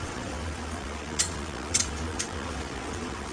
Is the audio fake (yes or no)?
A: yes